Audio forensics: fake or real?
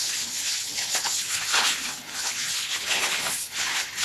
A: fake